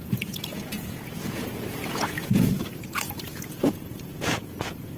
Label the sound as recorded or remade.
remade